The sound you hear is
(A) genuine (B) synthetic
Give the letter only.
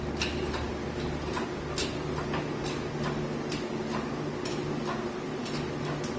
A